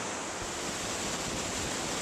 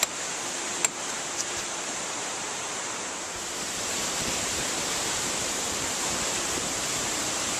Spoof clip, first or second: second